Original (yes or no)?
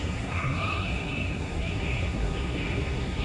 no